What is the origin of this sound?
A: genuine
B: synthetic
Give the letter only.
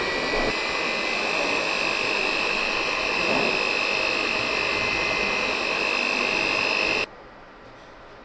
A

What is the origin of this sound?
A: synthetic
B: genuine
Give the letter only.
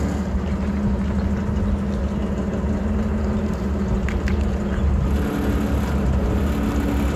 B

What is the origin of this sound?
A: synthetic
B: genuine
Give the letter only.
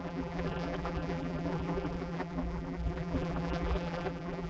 A